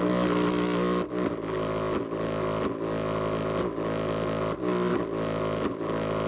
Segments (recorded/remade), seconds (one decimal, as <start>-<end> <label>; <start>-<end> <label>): 0.0-6.3 recorded